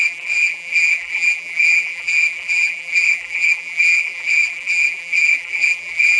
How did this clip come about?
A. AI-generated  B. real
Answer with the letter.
A